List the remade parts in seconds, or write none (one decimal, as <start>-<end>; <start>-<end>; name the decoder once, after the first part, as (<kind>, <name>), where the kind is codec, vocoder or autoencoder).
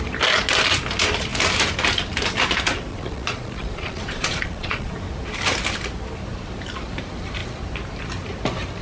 2.9-4.9 (vocoder, Vocos)